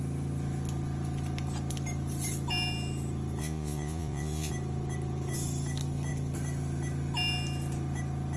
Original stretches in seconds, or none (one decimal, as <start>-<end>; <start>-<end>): 0.0-3.4; 4.5-8.4